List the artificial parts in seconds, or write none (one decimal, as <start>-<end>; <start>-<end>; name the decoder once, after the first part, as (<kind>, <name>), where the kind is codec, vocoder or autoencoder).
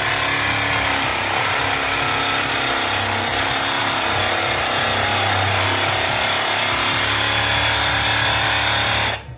3.8-4.4 (vocoder, BigVGAN v2); 5.1-6.6